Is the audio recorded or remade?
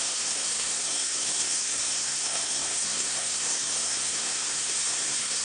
remade